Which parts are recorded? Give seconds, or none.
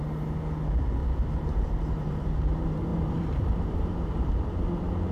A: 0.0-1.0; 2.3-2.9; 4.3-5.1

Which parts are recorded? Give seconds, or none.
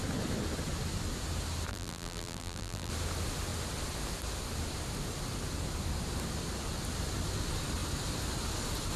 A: 0.0-1.7; 2.9-9.0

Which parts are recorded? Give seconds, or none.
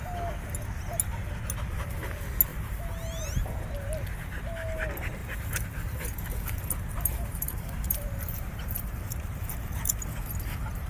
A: 0.0-2.5; 3.6-5.2; 9.9-10.9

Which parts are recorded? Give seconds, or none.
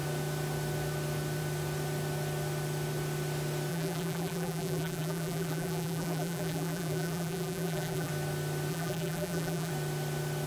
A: 0.0-3.7; 8.1-8.7; 9.7-10.5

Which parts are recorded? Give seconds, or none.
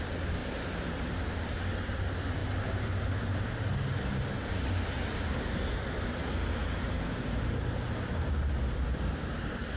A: 0.0-0.4; 1.4-6.6; 8.3-9.8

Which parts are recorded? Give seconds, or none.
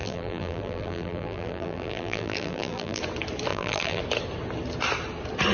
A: 3.0-3.5; 4.0-5.5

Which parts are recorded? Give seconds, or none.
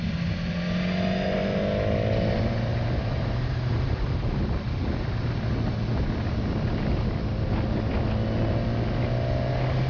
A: 0.0-2.7; 4.5-9.9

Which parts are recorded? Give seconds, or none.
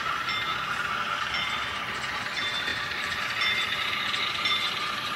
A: 0.0-2.7; 3.2-5.2